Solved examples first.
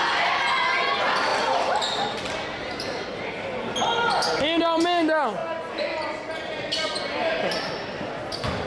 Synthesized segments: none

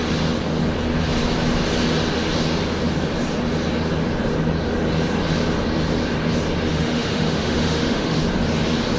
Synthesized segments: 6.7-8.2 (autoencoder, DAC-VAE)

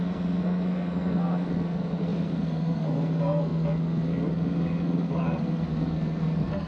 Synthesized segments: 0.0-6.7 (codec, SNAC)

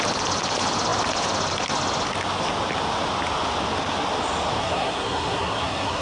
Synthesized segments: 4.6-6.0 (codec, SNAC)

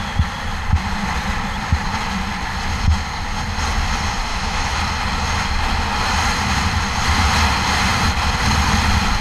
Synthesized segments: 4.3-4.8 (autoencoder, DAC-VAE)

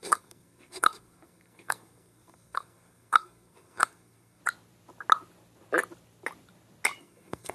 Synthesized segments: 0.0-4.4 (codec, SNAC); 7.0-7.5